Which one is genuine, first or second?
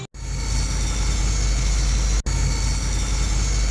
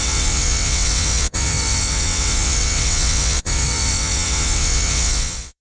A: first